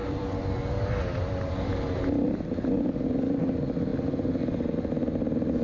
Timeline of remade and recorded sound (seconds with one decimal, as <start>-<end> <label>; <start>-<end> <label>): 0.0-3.4 remade; 3.4-5.6 recorded